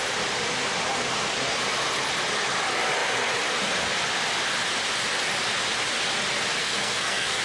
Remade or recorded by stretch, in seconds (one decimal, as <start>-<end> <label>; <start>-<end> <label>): 0.0-6.6 recorded; 6.6-7.4 remade

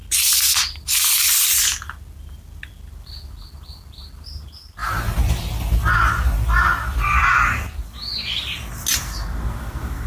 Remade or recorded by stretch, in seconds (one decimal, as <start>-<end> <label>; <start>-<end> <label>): 0.0-9.0 recorded; 9.0-10.1 remade

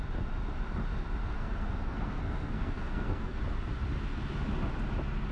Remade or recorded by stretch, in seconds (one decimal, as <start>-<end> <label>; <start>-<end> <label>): 0.0-1.2 recorded; 1.2-3.4 remade; 3.4-5.3 recorded

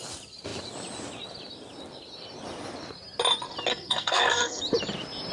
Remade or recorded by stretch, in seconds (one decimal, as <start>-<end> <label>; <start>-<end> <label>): 0.0-3.7 recorded; 3.7-4.6 remade; 4.6-5.3 recorded